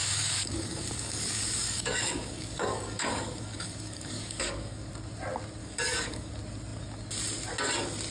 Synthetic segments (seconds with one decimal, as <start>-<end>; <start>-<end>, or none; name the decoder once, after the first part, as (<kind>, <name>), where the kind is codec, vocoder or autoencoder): 0.0-4.9 (codec, DAC); 5.6-6.3